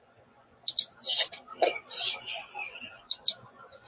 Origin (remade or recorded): remade